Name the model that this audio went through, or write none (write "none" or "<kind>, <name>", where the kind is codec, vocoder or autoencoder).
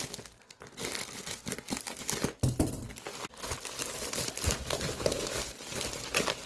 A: none